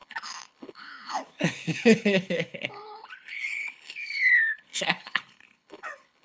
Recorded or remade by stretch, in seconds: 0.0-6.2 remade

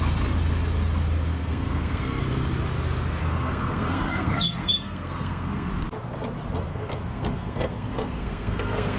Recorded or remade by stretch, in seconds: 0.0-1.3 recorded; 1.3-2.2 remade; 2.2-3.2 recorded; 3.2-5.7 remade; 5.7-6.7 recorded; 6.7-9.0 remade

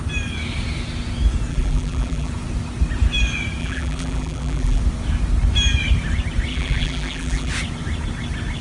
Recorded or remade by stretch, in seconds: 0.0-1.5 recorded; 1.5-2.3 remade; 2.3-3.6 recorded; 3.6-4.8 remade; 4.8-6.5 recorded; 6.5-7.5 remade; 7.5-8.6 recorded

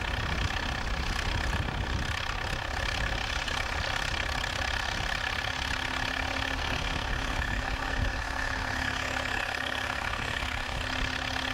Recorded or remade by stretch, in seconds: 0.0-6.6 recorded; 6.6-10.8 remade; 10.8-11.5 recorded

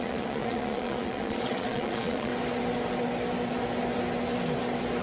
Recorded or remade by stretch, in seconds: 0.0-2.3 remade; 2.3-5.0 recorded

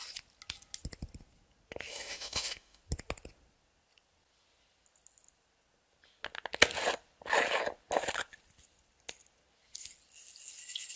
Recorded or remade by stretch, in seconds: 0.0-1.9 recorded; 1.9-2.8 remade; 2.8-11.0 recorded